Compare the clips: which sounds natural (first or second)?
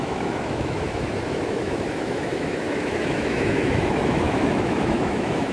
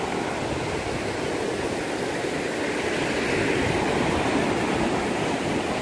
second